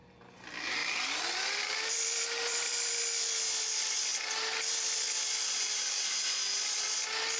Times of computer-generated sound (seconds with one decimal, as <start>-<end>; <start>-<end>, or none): 0.8-2.9; 4.1-6.0

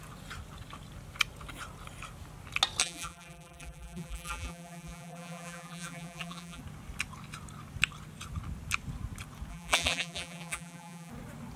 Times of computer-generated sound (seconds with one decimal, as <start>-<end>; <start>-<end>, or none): 2.8-6.6; 9.5-11.1